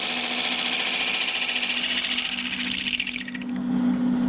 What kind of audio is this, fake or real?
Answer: real